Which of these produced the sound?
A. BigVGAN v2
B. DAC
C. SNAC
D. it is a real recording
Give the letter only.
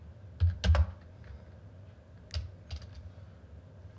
D